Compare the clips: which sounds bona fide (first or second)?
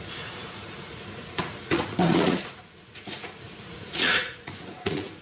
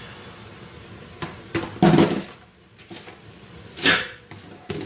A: second